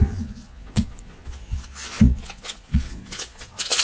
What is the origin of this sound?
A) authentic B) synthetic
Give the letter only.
B